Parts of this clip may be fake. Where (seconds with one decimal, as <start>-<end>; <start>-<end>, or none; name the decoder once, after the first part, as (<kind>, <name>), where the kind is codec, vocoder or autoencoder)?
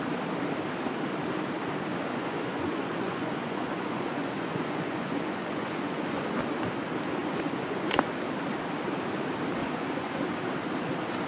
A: 1.9-6.4 (vocoder, Vocos); 7.2-8.1; 9.6-10.2